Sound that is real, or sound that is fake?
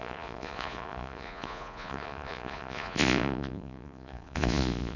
fake